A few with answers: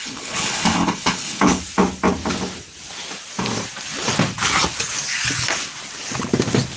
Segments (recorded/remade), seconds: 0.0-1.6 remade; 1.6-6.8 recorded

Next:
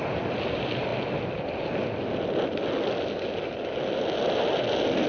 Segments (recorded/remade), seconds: 0.0-5.1 recorded